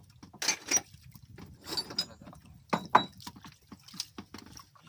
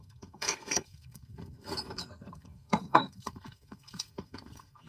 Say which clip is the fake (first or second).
second